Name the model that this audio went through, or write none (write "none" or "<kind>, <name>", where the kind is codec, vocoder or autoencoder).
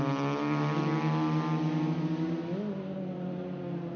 none